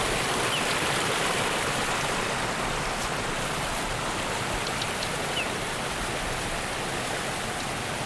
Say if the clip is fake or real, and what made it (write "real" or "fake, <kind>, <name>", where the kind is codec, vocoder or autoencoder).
real